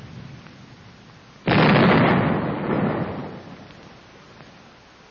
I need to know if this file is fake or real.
real